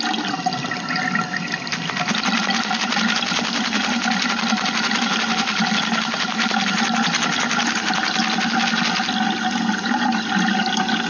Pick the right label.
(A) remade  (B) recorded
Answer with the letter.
B